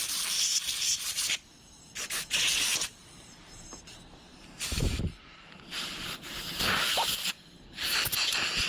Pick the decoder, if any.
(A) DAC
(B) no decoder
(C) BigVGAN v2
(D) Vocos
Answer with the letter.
C